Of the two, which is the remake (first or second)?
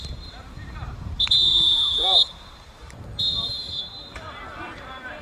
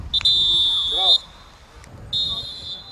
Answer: first